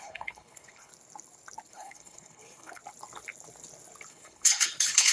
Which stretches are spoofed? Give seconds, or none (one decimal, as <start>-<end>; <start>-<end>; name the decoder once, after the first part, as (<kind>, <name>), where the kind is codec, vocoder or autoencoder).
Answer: 0.0-0.9 (codec, HILCodec); 1.7-2.8; 4.1-5.1